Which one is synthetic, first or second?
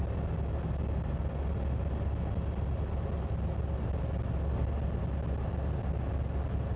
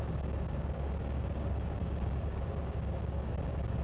second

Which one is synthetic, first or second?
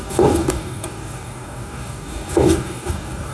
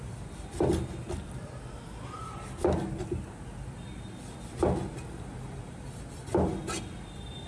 first